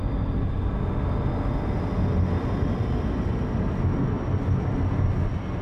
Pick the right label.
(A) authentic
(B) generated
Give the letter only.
A